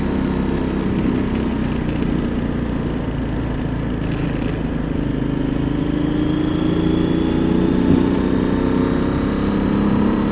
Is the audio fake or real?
real